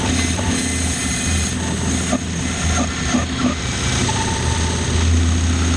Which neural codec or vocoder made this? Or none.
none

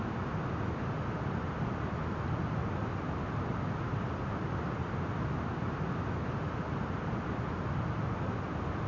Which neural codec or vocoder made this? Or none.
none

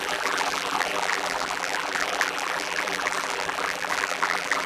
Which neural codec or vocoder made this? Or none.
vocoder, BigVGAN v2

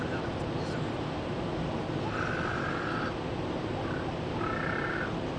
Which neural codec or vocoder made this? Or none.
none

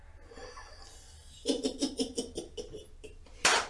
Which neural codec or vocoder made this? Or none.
none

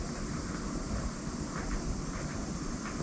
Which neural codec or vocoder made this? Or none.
none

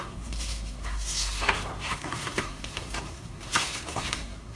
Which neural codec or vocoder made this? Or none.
codec, SNAC